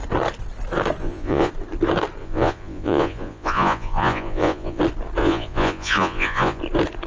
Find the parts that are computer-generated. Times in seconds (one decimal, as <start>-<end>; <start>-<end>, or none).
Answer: 1.0-1.5; 2.2-4.8; 5.2-6.6